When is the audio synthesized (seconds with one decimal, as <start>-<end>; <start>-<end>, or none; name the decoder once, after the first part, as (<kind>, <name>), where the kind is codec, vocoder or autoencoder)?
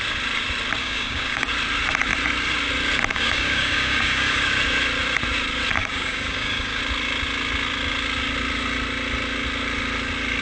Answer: 0.8-1.5 (codec, DAC); 3.1-4.5; 5.8-6.8